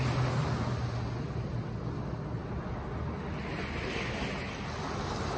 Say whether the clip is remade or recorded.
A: recorded